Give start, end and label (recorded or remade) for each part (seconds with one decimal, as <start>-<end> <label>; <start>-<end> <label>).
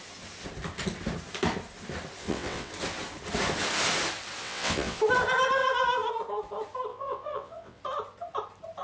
0.0-2.2 recorded; 2.2-2.7 remade; 2.7-4.4 recorded; 4.4-5.0 remade; 5.0-6.9 recorded; 6.9-7.8 remade; 7.8-8.8 recorded